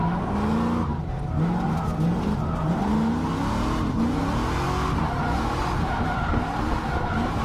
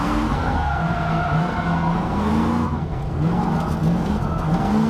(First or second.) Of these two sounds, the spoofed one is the second